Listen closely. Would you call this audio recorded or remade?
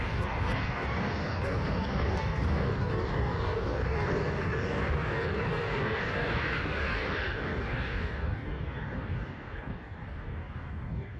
remade